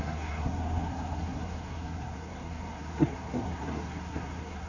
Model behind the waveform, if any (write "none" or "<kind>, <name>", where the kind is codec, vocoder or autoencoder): codec, SNAC